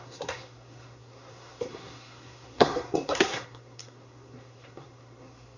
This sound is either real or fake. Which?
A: fake